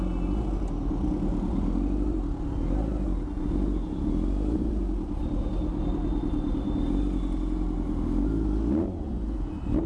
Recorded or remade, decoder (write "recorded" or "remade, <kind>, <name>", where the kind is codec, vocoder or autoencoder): recorded